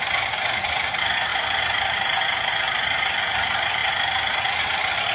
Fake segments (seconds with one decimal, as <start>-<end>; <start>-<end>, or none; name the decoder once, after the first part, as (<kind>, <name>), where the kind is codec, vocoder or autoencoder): none